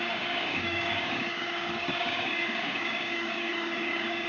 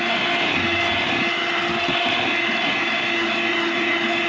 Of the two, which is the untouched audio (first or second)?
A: second